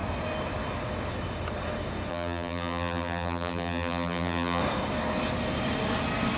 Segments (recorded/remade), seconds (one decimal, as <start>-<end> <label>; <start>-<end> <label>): 0.0-2.1 recorded; 2.1-4.6 remade; 4.6-6.4 recorded